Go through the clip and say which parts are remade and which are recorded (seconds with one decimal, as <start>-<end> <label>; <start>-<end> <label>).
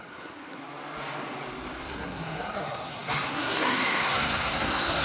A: 0.0-0.6 remade; 0.6-1.8 recorded; 1.8-5.0 remade